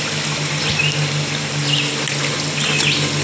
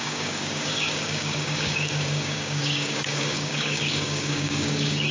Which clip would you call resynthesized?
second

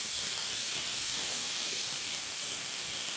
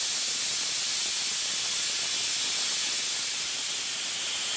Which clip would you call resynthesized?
first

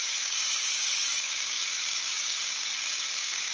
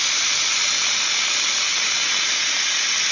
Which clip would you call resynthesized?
first